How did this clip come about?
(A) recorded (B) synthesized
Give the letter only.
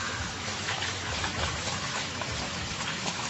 B